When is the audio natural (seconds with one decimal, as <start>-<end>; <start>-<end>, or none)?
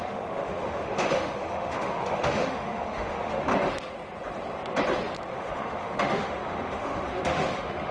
3.5-5.3